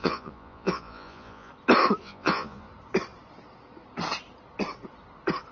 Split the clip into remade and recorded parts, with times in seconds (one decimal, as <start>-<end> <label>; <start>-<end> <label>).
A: 0.0-1.5 remade; 1.5-2.0 recorded; 2.0-2.7 remade; 2.7-5.5 recorded

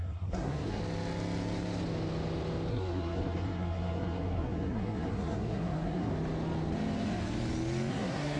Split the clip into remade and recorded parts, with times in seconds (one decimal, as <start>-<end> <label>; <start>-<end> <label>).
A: 0.0-0.8 remade; 0.8-2.7 recorded; 2.7-6.1 remade; 6.1-7.9 recorded; 7.9-8.4 remade

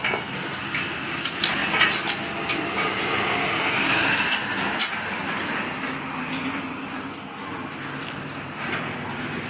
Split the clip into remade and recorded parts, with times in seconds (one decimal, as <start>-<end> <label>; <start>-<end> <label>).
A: 0.0-1.6 remade; 1.6-6.6 recorded; 6.6-7.4 remade; 7.4-8.0 recorded; 8.0-9.5 remade

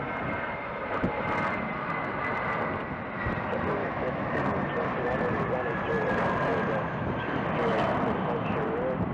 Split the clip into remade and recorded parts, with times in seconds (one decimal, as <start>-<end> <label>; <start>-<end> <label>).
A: 0.0-3.8 recorded; 3.8-4.4 remade; 4.4-9.1 recorded

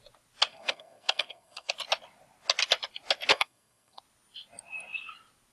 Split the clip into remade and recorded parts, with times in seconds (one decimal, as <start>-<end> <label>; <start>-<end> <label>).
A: 0.0-0.5 recorded; 0.5-1.7 remade; 1.7-3.3 recorded; 3.3-4.0 remade; 4.0-5.5 recorded

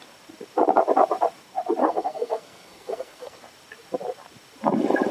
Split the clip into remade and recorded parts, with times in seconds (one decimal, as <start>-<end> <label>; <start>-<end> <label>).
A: 0.0-1.8 recorded; 1.8-3.4 remade; 3.4-5.1 recorded

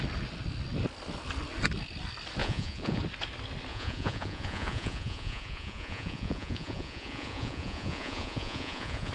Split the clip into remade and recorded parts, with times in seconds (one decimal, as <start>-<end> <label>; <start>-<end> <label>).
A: 0.0-2.4 recorded; 2.4-3.0 remade; 3.0-3.7 recorded; 3.7-9.1 remade